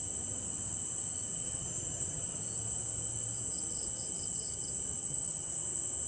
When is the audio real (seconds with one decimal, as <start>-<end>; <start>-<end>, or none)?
0.0-1.4; 2.4-5.0; 5.5-6.1

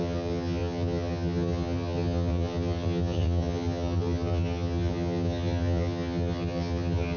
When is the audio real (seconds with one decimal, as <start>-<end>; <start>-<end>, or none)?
none

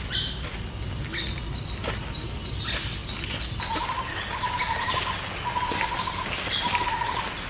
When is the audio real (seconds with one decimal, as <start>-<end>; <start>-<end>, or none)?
0.0-7.5

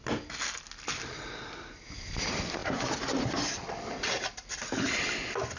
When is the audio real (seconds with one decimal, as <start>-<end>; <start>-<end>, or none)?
0.0-5.6

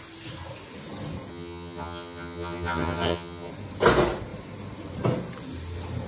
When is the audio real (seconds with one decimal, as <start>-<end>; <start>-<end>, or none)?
0.0-1.3; 3.5-6.1